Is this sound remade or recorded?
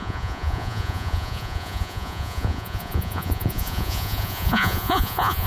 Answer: remade